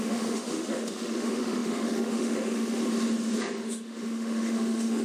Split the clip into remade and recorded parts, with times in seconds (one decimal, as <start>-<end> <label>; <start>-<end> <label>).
0.0-2.8 remade; 2.8-3.6 recorded; 3.6-5.0 remade